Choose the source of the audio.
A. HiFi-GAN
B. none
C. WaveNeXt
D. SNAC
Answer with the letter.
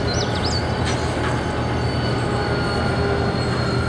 B